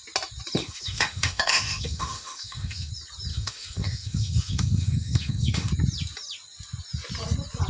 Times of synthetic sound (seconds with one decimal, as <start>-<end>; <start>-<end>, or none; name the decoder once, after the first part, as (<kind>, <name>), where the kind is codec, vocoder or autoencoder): 0.6-2.9 (autoencoder, DAC-VAE); 3.3-5.7